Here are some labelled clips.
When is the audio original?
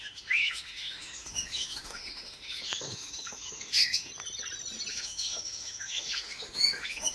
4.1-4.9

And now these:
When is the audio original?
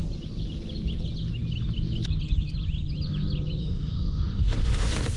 0.0-3.6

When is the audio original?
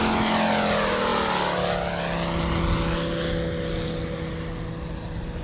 0.0-5.4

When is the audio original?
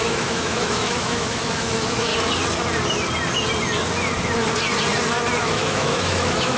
2.1-5.4